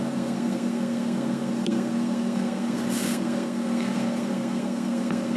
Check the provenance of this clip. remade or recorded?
remade